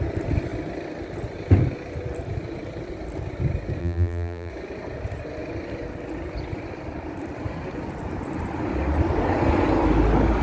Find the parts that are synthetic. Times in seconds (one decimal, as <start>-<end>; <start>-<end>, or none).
3.8-4.5